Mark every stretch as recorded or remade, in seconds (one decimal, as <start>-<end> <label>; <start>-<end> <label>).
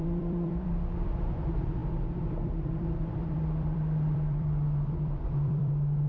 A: 0.0-6.1 remade